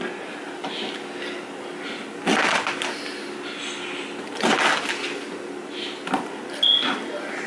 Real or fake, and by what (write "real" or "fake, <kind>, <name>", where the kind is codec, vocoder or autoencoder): real